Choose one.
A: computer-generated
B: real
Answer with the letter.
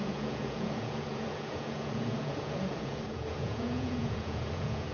A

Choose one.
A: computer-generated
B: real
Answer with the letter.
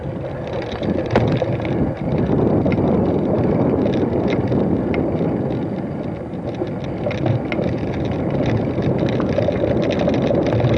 B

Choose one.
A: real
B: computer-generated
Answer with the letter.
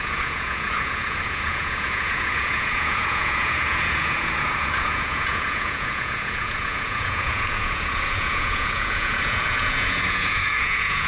B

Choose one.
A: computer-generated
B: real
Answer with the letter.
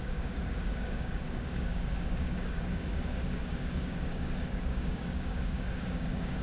A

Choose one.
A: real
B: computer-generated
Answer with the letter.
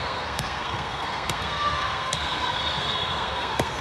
B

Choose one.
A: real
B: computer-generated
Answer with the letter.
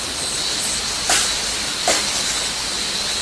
A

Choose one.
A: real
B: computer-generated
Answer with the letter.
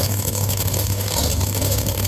B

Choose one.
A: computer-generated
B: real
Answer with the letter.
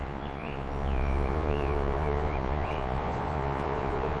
A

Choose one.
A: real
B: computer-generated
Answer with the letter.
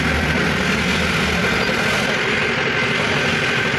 A